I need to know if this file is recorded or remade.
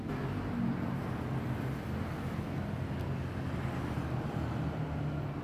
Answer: recorded